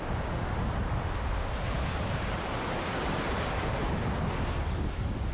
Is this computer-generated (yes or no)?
no